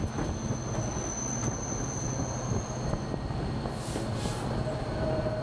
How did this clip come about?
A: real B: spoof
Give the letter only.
A